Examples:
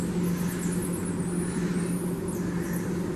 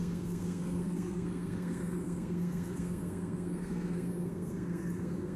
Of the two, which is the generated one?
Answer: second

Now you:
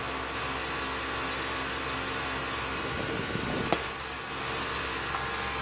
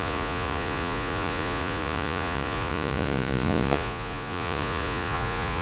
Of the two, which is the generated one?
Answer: second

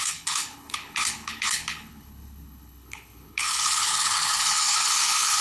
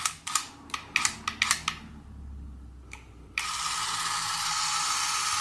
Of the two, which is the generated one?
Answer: first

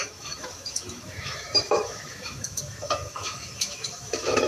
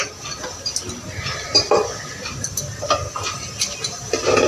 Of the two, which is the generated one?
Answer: first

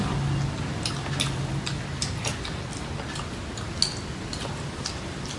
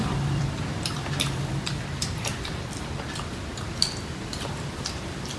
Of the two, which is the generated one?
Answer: second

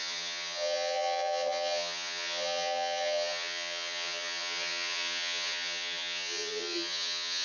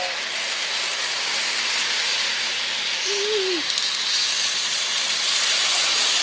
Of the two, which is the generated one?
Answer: first